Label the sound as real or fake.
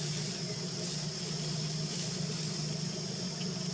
real